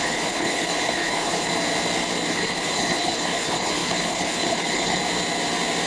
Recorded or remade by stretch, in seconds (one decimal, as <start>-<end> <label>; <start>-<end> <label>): 0.0-1.5 remade; 1.5-2.3 recorded; 2.3-5.0 remade; 5.0-5.9 recorded